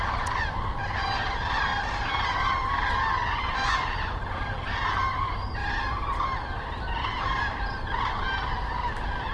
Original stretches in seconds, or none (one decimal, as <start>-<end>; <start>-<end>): 0.0-9.3